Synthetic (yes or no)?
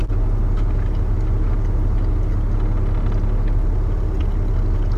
no